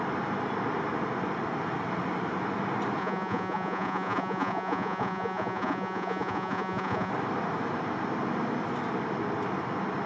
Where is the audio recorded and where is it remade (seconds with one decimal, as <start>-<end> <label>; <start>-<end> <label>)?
0.0-3.0 recorded; 3.0-7.1 remade; 7.1-10.1 recorded